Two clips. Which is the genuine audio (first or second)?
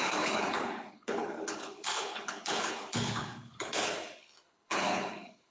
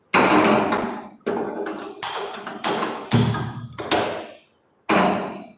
second